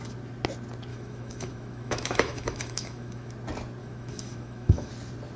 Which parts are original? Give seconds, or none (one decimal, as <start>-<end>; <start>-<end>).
0.0-0.9; 3.3-3.8; 4.9-5.4